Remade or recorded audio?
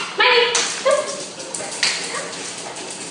recorded